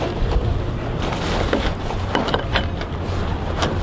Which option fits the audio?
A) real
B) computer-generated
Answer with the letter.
A